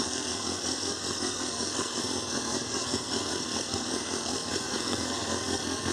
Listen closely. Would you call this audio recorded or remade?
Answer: remade